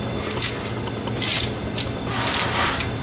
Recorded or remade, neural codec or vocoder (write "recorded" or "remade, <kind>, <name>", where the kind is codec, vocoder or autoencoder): recorded